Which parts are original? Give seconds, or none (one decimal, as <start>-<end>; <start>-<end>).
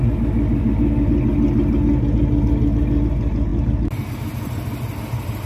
0.0-5.5